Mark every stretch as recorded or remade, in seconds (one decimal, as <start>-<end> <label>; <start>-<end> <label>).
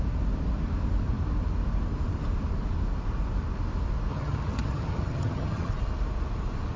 0.0-4.1 recorded; 4.1-5.7 remade; 5.7-6.8 recorded